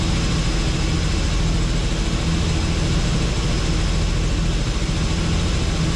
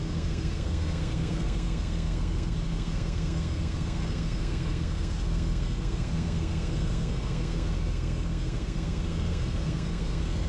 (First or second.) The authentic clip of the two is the first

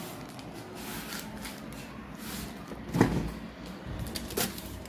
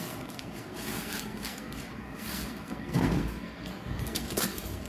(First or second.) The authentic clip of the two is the first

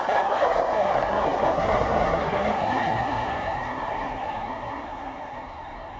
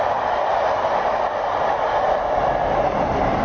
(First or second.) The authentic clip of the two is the second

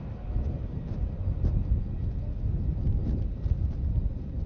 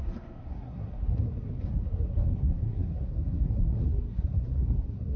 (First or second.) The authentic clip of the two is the first